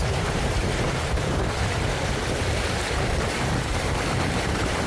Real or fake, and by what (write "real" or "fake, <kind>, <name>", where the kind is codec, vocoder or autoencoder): fake, vocoder, BigVGAN v2